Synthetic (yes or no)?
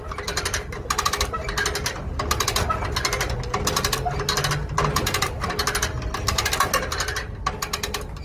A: no